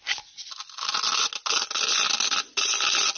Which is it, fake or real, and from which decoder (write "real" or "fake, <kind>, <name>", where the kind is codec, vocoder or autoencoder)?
real